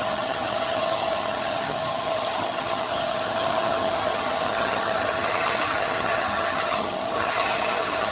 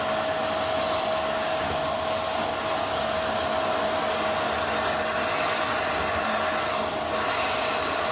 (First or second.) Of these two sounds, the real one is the second